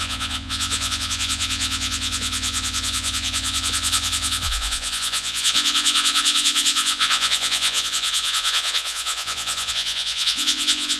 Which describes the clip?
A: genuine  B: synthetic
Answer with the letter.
B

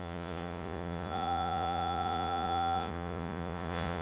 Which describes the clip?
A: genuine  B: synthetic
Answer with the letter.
B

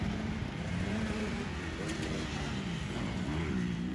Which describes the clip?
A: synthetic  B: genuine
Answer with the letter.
B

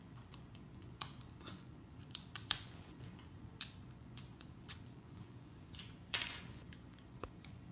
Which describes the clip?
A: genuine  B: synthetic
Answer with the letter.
B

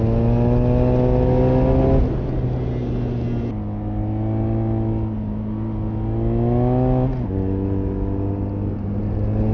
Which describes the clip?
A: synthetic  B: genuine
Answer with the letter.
B